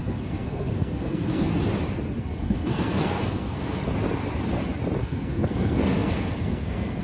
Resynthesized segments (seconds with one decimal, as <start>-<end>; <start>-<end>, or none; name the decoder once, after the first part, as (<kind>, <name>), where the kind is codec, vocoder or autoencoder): 0.0-1.5 (codec, SNAC); 2.2-3.8; 5.0-7.0